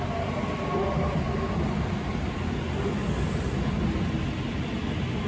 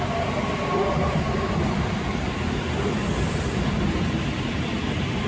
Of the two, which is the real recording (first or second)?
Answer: first